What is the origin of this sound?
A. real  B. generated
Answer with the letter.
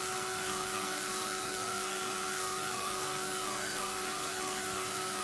B